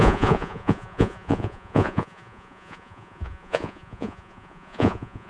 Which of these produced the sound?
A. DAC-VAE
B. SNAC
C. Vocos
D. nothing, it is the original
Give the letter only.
C